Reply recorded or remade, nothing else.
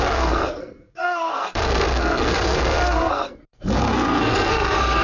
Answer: remade